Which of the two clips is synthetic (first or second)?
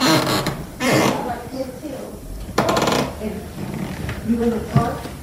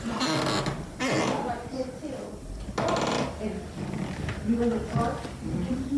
first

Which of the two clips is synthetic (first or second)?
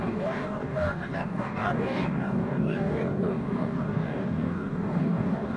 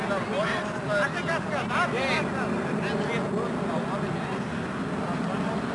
first